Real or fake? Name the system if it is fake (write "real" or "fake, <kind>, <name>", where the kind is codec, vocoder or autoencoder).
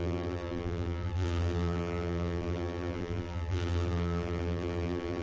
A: fake, vocoder, BigVGAN v2